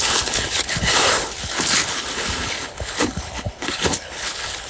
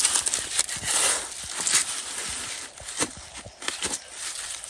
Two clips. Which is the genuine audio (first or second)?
second